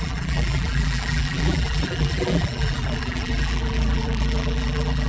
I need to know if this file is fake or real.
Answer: fake